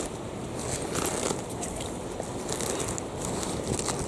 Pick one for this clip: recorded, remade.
recorded